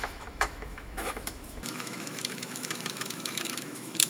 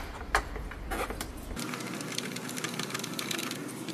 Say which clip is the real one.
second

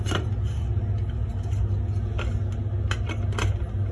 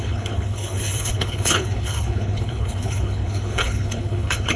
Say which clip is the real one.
first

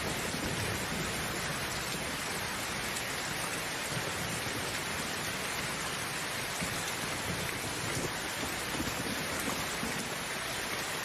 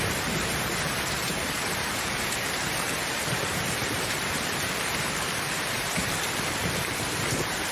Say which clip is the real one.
first